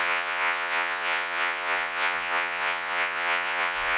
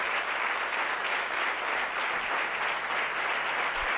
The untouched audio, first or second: second